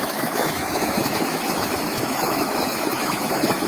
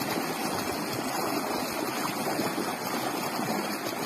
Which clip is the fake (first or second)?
first